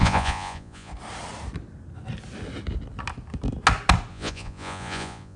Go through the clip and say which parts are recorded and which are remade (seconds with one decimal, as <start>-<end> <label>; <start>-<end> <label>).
0.0-0.9 remade; 0.9-4.1 recorded; 4.1-5.4 remade